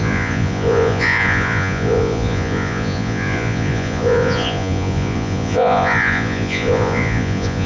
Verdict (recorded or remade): remade